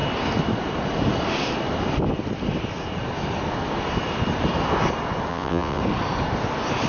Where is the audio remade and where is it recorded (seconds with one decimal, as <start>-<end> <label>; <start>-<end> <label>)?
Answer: 0.0-5.3 recorded; 5.3-5.8 remade; 5.8-6.9 recorded